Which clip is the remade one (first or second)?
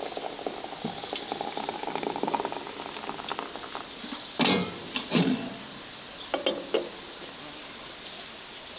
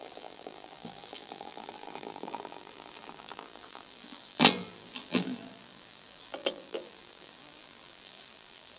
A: second